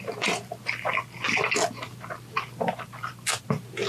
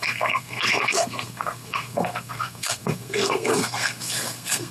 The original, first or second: first